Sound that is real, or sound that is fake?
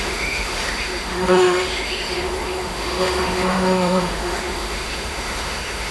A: fake